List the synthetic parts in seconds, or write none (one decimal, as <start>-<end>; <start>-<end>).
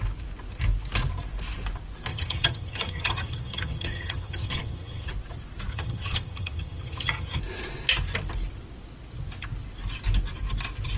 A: 2.1-5.1; 5.7-7.4